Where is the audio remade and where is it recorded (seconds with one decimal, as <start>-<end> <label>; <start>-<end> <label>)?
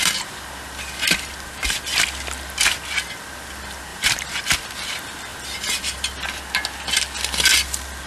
0.0-3.9 recorded; 3.9-4.4 remade; 4.4-8.1 recorded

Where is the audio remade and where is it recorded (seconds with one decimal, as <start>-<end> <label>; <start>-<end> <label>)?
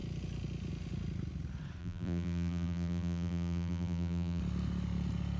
0.0-1.8 recorded; 1.8-4.4 remade; 4.4-5.4 recorded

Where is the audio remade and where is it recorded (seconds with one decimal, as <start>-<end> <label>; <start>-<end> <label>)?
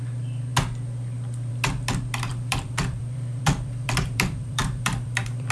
0.0-2.3 recorded; 2.3-5.5 remade